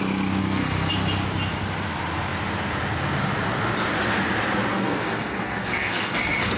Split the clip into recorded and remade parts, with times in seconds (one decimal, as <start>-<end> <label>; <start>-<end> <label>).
0.0-0.4 recorded; 0.4-0.9 remade; 0.9-4.7 recorded; 4.7-6.6 remade